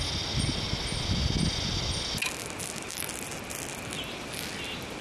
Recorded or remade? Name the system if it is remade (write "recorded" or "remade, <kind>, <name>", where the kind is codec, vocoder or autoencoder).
recorded